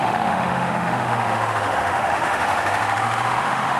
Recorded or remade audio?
remade